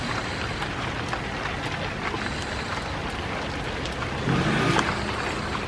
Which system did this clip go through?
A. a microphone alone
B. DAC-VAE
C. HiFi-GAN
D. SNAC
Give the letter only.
A